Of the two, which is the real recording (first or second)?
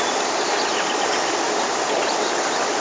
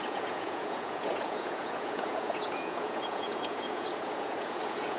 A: first